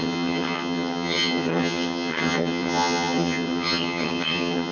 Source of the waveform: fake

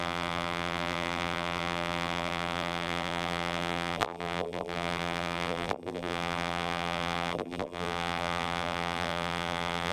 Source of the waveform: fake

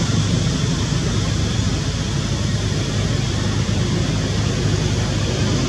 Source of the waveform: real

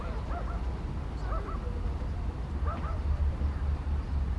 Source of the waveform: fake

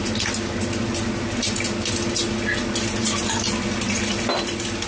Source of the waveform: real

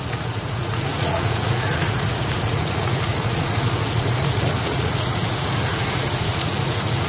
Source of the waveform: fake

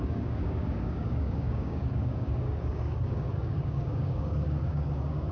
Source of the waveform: fake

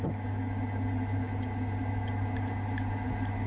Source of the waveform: real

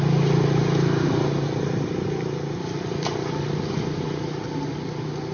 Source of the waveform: real